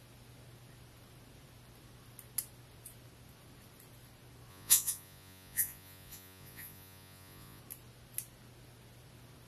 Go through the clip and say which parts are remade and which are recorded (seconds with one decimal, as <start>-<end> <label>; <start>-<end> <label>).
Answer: 0.0-4.5 recorded; 4.5-7.6 remade; 7.6-9.5 recorded

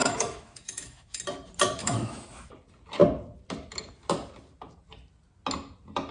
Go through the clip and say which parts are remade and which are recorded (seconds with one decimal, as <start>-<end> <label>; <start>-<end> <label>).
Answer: 0.0-1.2 remade; 1.2-1.8 recorded; 1.8-2.5 remade; 2.5-6.1 recorded

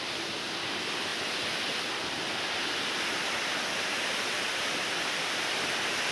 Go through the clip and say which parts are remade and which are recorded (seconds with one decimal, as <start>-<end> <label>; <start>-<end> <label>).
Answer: 0.0-6.1 recorded

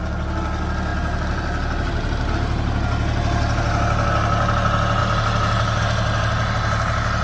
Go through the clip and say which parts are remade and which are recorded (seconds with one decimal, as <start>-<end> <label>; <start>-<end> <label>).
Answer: 0.0-5.0 recorded; 5.0-5.8 remade; 5.8-7.2 recorded

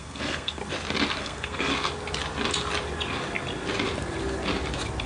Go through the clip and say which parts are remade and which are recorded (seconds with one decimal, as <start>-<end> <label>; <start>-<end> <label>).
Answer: 0.0-0.6 remade; 0.6-1.2 recorded; 1.2-1.7 remade; 1.7-5.1 recorded

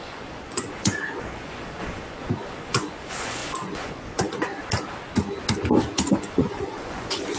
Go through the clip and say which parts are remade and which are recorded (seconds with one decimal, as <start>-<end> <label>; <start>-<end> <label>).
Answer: 0.0-4.5 remade; 4.5-6.1 recorded; 6.1-7.4 remade